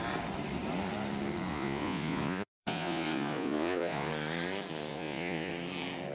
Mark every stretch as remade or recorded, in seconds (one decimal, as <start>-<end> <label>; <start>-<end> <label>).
0.0-1.5 recorded; 1.5-4.1 remade; 4.1-4.9 recorded; 4.9-5.5 remade; 5.5-6.1 recorded